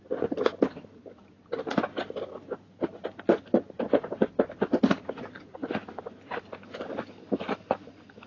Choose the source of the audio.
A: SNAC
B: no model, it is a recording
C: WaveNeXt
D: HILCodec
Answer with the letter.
B